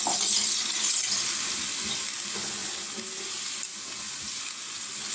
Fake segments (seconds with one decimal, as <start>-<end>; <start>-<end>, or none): 2.6-3.2; 3.7-5.1